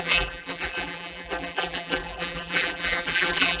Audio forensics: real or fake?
fake